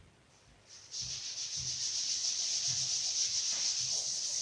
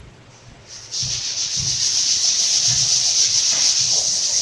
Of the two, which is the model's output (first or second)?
second